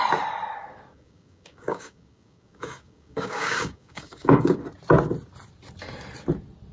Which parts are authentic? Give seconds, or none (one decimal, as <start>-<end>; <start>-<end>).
0.0-0.9; 4.6-6.7

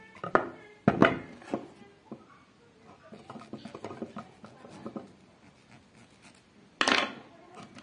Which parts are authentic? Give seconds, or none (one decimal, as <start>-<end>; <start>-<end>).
0.0-7.8

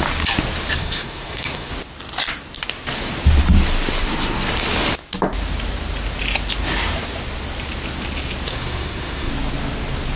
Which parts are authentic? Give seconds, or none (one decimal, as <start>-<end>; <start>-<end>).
0.0-0.8; 1.7-8.5; 9.3-10.2

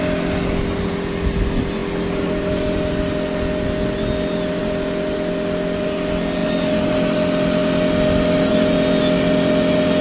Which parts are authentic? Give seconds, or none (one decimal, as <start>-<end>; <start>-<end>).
0.0-10.0

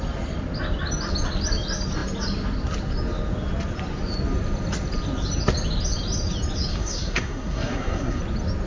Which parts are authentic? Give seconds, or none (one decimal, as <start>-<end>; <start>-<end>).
0.0-6.7; 8.2-8.7

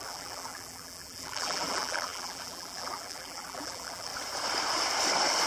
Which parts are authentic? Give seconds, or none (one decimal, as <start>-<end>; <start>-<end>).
4.1-5.5

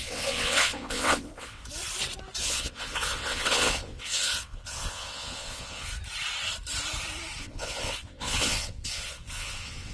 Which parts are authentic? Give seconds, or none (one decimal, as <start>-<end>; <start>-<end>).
1.6-2.4; 5.9-7.4

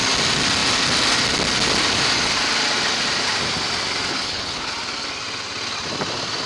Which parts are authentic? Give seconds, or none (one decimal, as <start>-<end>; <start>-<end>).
0.0-4.1; 4.7-6.5